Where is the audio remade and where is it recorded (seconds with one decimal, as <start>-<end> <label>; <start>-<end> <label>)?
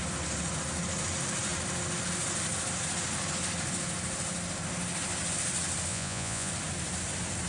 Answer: 0.0-5.9 recorded; 5.9-6.5 remade; 6.5-7.5 recorded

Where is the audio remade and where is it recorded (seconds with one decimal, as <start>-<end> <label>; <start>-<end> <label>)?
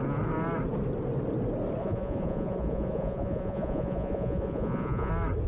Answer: 0.0-1.8 recorded; 1.8-5.1 remade; 5.1-5.5 recorded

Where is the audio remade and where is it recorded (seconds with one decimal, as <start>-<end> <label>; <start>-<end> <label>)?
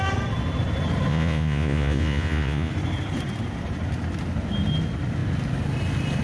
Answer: 0.0-1.1 recorded; 1.1-2.7 remade; 2.7-6.2 recorded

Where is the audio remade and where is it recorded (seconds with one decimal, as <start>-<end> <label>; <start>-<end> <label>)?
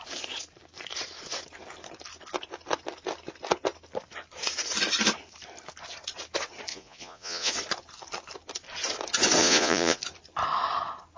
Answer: 0.0-6.7 recorded; 6.7-7.5 remade; 7.5-9.4 recorded; 9.4-10.0 remade; 10.0-11.2 recorded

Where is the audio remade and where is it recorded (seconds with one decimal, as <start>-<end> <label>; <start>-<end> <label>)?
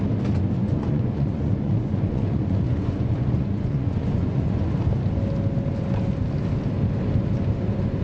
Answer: 0.0-0.6 recorded; 0.6-4.7 remade; 4.7-8.0 recorded